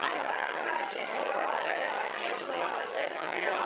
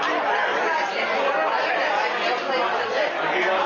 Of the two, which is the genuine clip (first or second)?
second